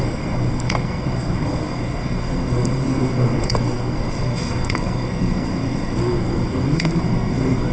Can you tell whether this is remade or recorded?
remade